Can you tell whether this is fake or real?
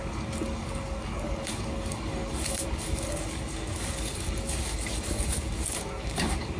fake